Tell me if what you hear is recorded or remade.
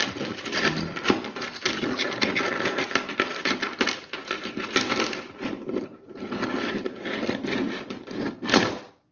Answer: remade